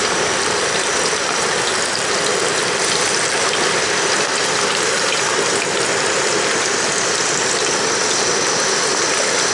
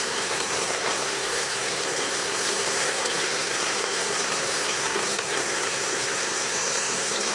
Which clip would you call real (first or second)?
first